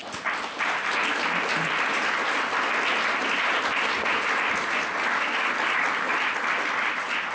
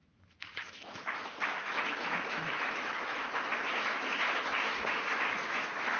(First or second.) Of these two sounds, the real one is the first